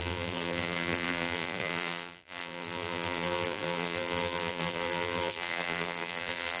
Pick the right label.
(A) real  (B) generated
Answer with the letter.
B